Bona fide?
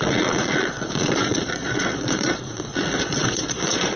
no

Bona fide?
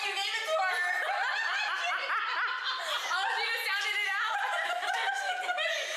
yes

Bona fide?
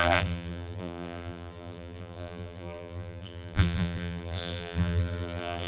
no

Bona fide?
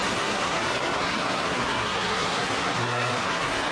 no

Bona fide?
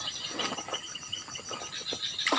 yes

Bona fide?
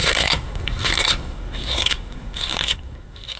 no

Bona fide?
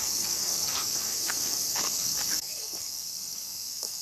no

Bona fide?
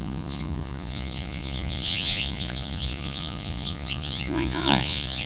no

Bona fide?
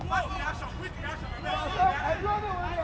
yes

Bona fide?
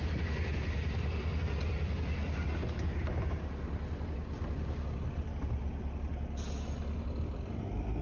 yes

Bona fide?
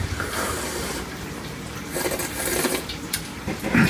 no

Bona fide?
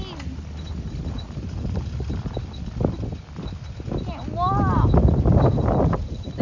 yes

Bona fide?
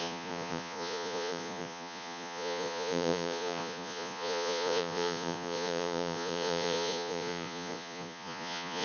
no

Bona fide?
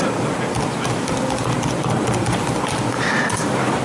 no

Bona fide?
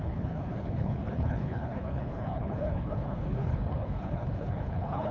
no